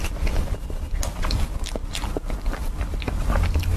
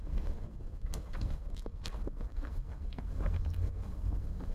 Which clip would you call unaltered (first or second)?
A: first